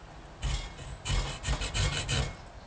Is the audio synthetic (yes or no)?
no